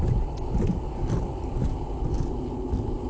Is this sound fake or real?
real